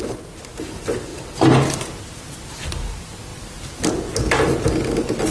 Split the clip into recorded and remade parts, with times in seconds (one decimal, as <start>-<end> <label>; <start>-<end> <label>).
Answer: 0.0-5.3 recorded